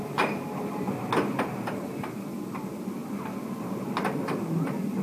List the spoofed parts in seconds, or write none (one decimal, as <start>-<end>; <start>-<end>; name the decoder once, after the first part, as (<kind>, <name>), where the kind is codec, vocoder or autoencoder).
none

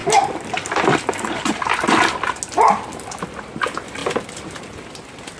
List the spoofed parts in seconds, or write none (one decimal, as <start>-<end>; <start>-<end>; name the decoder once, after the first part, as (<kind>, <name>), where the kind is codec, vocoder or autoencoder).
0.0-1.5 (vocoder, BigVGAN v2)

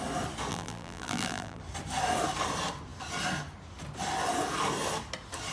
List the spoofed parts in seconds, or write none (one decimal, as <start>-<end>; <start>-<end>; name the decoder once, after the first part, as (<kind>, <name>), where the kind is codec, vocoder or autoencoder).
0.5-1.6 (vocoder, BigVGAN v2)